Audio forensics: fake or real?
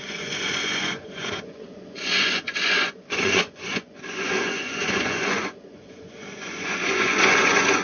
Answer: fake